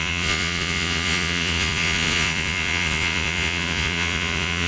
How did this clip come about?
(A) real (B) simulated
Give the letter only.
B